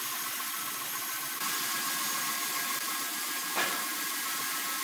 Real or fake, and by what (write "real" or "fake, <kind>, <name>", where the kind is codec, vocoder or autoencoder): real